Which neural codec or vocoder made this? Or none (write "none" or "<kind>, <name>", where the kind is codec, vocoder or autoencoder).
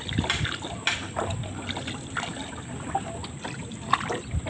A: none